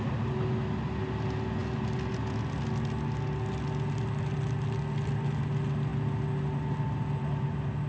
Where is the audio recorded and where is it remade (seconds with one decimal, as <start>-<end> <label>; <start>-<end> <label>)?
0.0-7.9 recorded